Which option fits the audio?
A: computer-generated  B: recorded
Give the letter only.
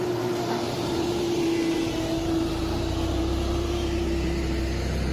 A